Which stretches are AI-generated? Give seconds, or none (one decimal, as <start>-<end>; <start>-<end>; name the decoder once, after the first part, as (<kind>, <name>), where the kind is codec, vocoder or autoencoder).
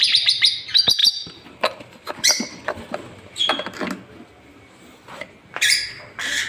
1.0-3.4 (vocoder, BigVGAN v2)